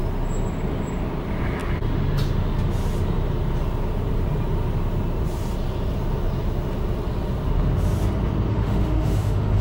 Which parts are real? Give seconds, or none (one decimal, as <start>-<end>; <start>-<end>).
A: 0.0-8.5